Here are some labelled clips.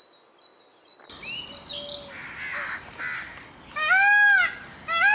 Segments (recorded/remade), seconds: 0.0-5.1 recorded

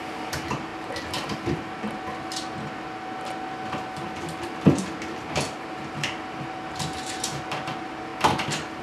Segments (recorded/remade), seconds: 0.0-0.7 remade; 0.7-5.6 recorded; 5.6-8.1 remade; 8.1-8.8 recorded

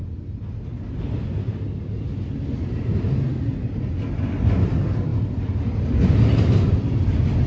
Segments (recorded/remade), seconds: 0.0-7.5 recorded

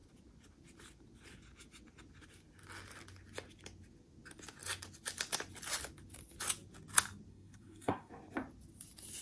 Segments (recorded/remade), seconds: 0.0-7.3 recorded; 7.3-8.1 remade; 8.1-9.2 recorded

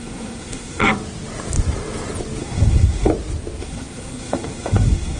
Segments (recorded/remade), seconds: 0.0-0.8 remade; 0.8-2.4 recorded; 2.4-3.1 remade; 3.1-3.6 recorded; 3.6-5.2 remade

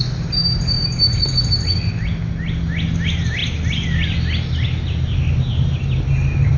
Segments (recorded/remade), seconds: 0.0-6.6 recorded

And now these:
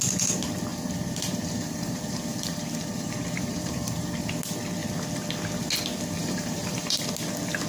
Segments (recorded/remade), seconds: 0.0-0.7 recorded; 0.7-4.3 remade; 4.3-6.2 recorded; 6.2-7.0 remade; 7.0-7.7 recorded

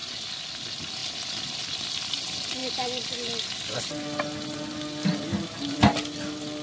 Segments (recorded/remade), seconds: 0.0-6.6 recorded